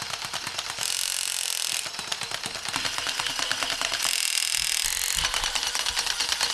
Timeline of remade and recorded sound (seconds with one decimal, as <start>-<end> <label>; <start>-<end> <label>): 0.0-6.5 recorded